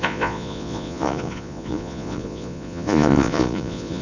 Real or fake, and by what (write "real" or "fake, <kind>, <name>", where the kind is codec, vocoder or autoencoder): fake, vocoder, Vocos